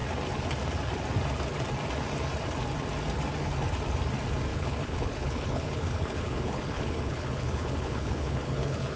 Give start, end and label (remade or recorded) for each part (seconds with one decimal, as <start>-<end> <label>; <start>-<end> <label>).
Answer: 0.0-4.5 recorded; 4.5-9.0 remade